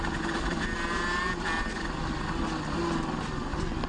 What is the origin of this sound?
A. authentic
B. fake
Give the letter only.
A